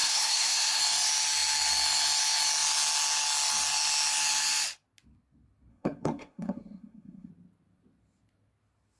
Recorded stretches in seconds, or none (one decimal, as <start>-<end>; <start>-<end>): 0.8-5.7; 7.3-9.0